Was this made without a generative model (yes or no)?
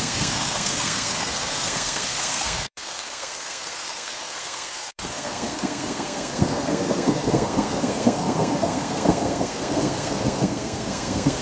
no